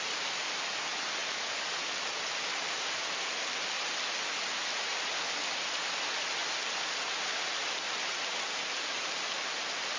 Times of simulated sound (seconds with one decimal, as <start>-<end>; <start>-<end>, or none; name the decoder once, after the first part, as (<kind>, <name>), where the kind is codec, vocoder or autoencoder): none